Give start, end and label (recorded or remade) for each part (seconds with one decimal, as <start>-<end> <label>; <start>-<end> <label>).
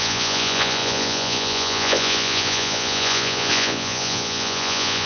0.0-5.1 remade